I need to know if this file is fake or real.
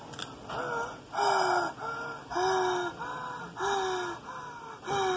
real